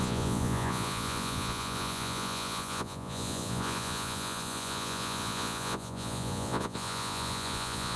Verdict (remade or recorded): remade